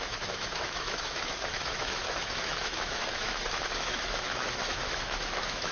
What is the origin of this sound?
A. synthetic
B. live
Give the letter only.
A